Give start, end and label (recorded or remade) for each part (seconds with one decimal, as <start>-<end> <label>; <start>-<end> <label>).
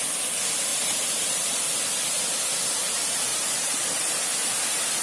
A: 0.0-0.7 recorded; 0.7-1.8 remade; 1.8-3.3 recorded; 3.3-4.2 remade; 4.2-5.0 recorded